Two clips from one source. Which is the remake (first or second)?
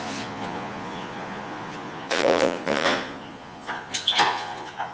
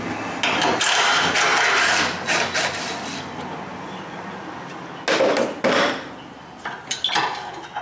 first